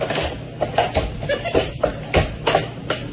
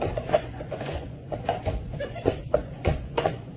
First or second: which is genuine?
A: first